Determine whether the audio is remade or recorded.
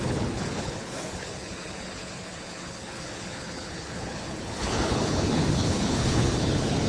remade